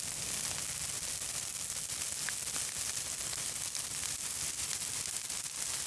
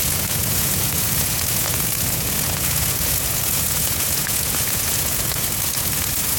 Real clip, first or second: first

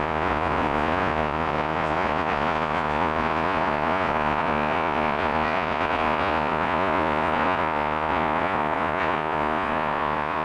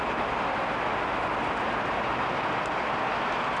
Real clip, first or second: second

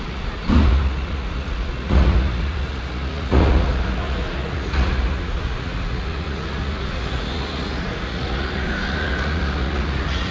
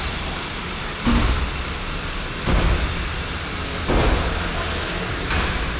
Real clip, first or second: second